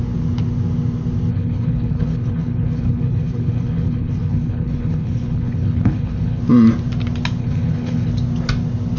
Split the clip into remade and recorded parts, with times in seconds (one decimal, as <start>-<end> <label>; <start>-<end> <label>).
0.0-1.3 recorded; 1.3-6.4 remade; 6.4-7.4 recorded; 7.4-8.1 remade; 8.1-9.0 recorded